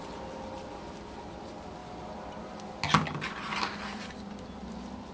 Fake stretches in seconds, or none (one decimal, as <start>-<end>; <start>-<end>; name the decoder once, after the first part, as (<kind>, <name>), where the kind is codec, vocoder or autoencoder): 1.8-2.4 (vocoder, BigVGAN v2)